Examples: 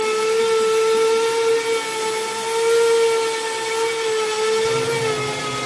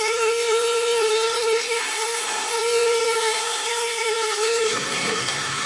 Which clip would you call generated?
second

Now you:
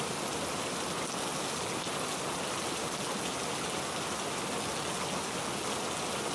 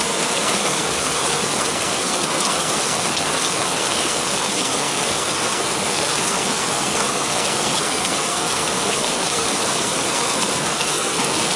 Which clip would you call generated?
second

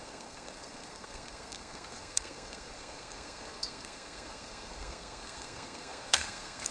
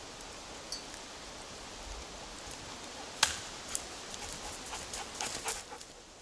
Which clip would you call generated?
first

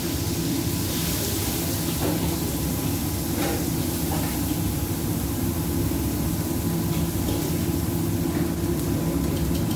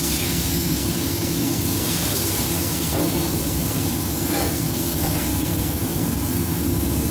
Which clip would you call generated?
second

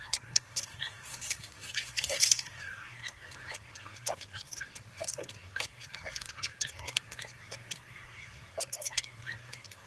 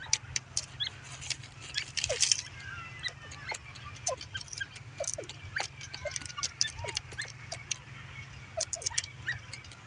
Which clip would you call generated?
first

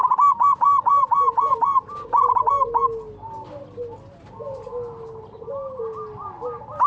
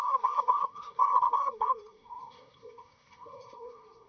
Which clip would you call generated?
second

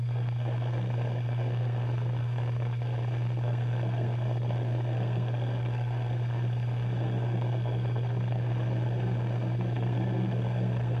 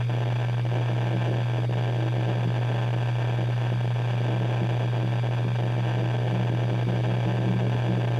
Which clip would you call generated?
first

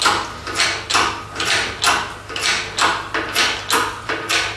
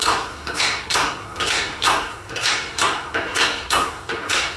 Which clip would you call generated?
second